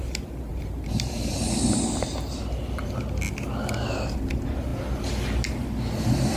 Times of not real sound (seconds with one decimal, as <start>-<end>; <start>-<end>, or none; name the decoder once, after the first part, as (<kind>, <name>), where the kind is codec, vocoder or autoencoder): 0.5-1.3 (vocoder, BigVGAN v2)